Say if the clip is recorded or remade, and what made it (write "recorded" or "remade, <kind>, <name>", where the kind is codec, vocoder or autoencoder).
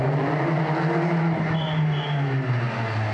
recorded